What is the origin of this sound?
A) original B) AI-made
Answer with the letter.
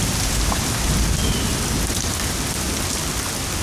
A